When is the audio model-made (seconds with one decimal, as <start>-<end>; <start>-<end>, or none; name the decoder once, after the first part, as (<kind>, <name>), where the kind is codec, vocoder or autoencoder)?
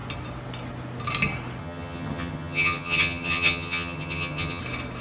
1.6-4.6 (vocoder, HiFi-GAN)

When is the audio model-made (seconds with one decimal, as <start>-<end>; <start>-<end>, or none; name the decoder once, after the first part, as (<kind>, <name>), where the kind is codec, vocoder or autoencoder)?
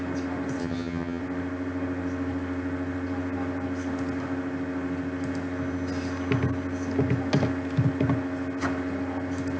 0.6-1.2 (vocoder, HiFi-GAN)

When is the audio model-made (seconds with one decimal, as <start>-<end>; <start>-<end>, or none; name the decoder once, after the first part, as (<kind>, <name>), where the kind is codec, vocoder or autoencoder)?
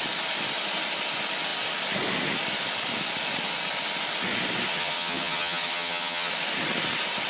4.7-6.3 (vocoder, HiFi-GAN)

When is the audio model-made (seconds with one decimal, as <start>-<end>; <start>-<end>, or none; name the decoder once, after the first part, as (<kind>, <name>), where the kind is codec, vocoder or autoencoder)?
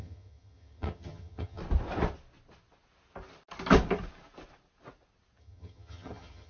0.0-1.6 (vocoder, HiFi-GAN); 5.4-6.5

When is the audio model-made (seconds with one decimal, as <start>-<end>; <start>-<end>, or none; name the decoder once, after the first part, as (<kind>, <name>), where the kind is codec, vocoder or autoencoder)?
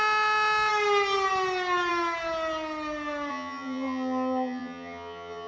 3.3-5.5 (vocoder, HiFi-GAN)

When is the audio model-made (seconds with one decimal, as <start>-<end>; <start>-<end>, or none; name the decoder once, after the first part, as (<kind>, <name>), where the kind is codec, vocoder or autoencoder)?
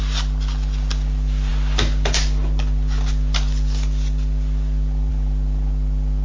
none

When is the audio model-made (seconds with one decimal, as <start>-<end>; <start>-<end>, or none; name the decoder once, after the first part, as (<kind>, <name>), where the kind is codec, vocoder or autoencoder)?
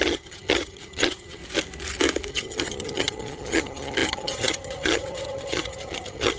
0.0-1.4 (vocoder, HiFi-GAN); 2.3-6.4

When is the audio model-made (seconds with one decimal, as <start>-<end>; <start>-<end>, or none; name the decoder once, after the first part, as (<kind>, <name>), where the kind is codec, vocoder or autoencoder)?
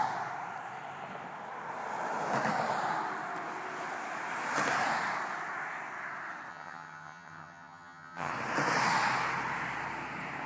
6.5-8.3 (vocoder, HiFi-GAN)